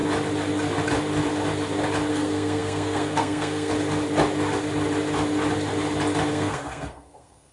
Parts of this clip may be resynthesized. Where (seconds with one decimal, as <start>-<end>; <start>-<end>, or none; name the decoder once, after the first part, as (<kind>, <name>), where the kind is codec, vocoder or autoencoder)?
2.1-3.7 (codec, SNAC); 6.3-7.5